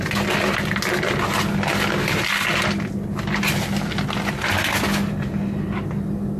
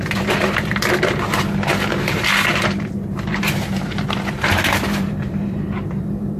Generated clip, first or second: second